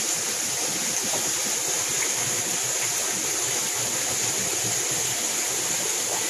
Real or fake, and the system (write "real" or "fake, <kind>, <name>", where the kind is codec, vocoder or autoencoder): real